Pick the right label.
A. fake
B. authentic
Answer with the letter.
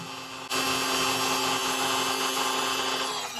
B